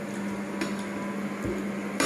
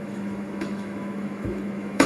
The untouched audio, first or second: first